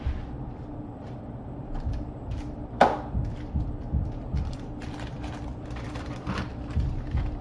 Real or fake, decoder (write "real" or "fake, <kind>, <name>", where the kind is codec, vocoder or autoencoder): fake, vocoder, BigVGAN v2